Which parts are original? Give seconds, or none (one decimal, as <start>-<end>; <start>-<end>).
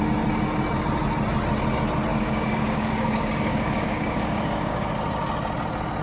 0.0-2.1; 4.9-6.0